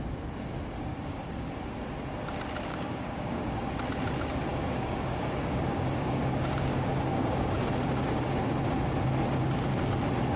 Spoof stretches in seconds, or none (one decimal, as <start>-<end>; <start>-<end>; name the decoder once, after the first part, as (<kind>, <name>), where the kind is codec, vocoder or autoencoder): 0.9-1.5 (codec, DAC); 2.7-3.7; 4.5-8.4